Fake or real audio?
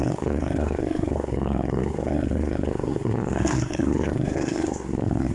fake